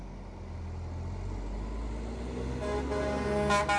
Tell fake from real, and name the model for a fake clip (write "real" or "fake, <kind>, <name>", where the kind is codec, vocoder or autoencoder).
real